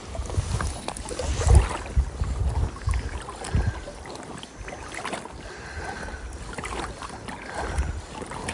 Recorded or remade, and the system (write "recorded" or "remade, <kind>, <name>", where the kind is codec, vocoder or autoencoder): recorded